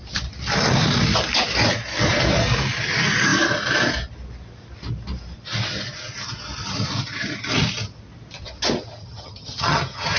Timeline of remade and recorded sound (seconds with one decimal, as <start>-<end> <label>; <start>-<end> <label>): 0.0-9.0 recorded; 9.0-10.2 remade